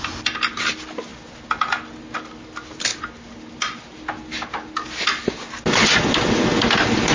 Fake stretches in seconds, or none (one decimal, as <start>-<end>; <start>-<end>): none